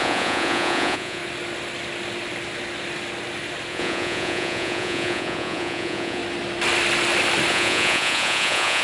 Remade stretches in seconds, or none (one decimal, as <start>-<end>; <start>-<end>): 0.0-1.2; 3.7-6.2; 7.5-8.8

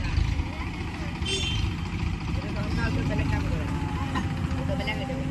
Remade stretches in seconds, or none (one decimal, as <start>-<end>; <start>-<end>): 0.0-3.2